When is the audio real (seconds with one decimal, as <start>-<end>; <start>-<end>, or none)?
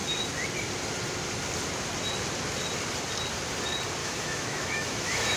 0.0-4.0